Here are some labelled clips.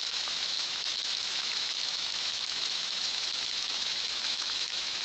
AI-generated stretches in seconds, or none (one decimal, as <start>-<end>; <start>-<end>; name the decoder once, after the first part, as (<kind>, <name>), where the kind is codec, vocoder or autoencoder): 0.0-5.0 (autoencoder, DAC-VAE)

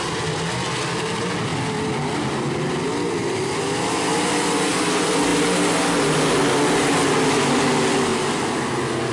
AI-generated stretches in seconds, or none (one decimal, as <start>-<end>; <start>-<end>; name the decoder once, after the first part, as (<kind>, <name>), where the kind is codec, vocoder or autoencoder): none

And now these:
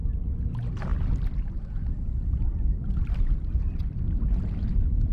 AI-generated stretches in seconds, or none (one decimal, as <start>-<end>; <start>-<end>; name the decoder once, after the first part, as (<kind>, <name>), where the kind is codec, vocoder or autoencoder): 0.9-4.0 (vocoder, BigVGAN v2)

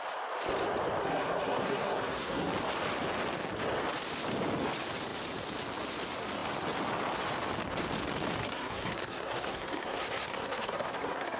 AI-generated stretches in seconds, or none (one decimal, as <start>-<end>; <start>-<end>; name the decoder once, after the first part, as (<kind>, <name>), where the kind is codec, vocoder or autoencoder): 1.0-2.5 (codec, SNAC); 8.4-11.4

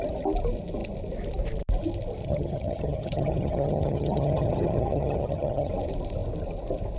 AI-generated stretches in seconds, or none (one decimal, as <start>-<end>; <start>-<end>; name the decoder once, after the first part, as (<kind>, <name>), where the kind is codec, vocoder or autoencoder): 2.2-5.7 (vocoder, HiFi-GAN)

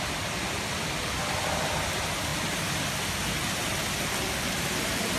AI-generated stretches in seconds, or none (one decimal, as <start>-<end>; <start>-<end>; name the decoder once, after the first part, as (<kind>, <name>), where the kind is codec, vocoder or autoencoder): none

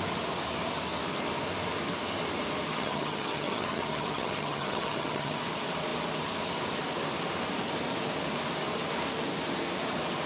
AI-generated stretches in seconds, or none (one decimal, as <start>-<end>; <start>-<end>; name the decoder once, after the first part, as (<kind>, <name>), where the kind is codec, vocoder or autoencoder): 2.7-5.4 (vocoder, HiFi-GAN)